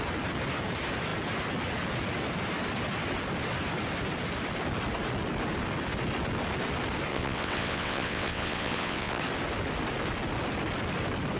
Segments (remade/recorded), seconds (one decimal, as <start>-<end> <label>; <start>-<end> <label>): 0.0-7.1 recorded; 7.1-9.2 remade; 9.2-11.4 recorded